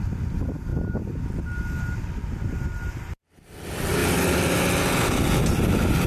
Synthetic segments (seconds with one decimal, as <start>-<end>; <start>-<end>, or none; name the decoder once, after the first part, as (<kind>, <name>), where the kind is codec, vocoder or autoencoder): none